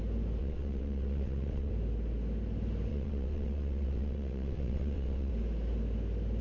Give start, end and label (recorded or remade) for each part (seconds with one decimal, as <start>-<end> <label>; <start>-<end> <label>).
0.0-0.4 recorded; 0.4-1.7 remade; 1.7-2.9 recorded; 2.9-5.3 remade; 5.3-6.4 recorded